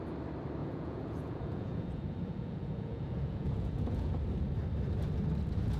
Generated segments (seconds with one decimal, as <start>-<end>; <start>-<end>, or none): 0.6-4.1